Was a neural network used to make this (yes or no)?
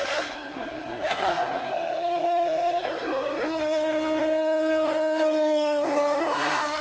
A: yes